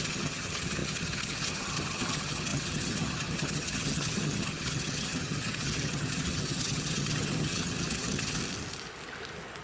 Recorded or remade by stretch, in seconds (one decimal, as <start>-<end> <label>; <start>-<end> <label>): 0.0-8.4 remade; 8.4-9.6 recorded